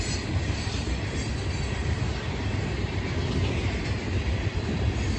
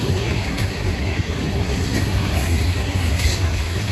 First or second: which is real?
first